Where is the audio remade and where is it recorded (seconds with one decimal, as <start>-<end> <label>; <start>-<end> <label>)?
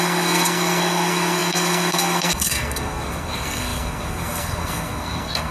0.0-5.5 remade